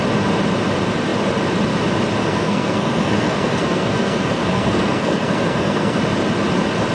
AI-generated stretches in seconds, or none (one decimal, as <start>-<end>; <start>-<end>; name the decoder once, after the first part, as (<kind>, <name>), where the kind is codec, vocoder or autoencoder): 2.2-6.0 (codec, SNAC)